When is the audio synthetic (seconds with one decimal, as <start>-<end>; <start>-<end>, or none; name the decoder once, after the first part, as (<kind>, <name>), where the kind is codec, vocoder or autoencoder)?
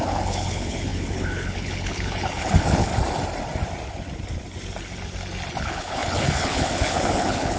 0.0-2.9 (codec, HILCodec); 5.6-7.6